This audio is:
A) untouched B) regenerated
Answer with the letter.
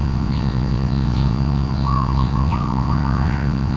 B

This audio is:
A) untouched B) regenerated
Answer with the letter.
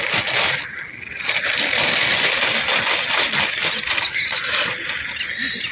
A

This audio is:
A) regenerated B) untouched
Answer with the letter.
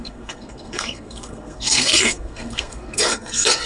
A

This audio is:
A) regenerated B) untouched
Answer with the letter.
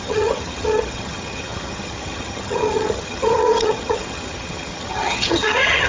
A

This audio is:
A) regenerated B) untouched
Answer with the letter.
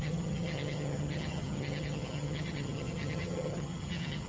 A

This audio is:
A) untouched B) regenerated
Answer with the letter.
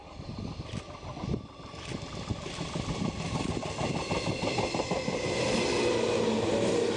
A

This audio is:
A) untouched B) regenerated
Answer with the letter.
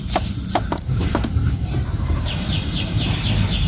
B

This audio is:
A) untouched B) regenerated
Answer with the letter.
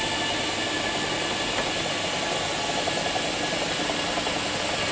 A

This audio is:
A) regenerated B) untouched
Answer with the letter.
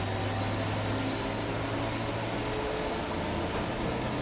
B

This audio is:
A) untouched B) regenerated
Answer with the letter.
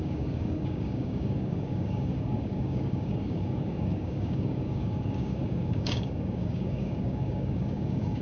B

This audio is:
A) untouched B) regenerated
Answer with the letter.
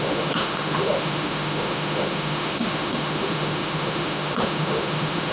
B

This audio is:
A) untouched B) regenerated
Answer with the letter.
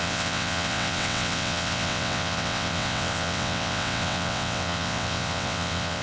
B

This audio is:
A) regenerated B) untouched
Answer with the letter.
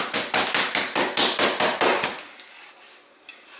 B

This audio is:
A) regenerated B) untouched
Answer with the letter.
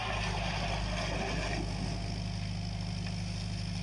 B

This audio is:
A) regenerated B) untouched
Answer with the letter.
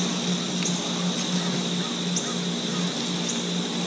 B